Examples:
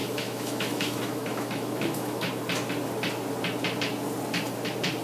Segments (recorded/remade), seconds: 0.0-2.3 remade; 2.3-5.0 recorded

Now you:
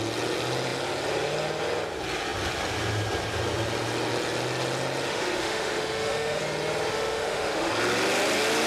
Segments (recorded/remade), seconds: 0.0-5.1 recorded; 5.1-6.4 remade; 6.4-6.9 recorded; 6.9-7.7 remade; 7.7-8.7 recorded

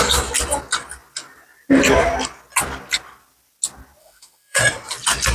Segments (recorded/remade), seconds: 0.0-4.0 recorded; 4.0-4.6 remade; 4.6-5.3 recorded

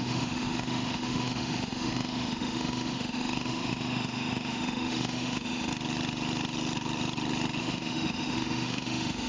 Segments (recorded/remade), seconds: 0.0-5.7 remade; 5.7-7.6 recorded; 7.6-9.3 remade

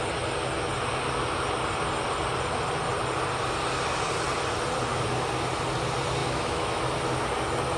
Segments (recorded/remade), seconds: 0.0-6.2 recorded; 6.2-6.8 remade; 6.8-7.8 recorded

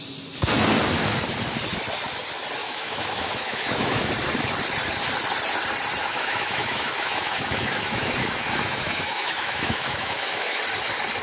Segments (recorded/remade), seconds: 0.0-2.6 recorded; 2.6-4.1 remade; 4.1-6.0 recorded; 6.0-10.6 remade; 10.6-11.2 recorded